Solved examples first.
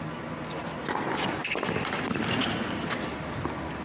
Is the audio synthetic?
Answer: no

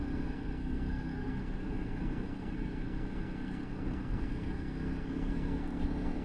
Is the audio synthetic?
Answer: yes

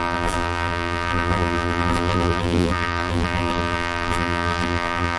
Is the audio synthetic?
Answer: yes